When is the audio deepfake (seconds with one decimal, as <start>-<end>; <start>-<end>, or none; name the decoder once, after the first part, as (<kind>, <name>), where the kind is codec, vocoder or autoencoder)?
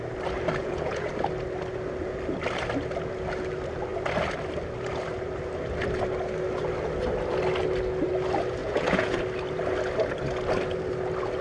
0.6-1.1 (vocoder, Vocos); 8.6-9.2